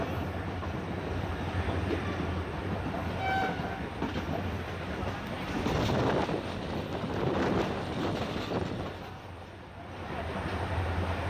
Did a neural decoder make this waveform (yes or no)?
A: no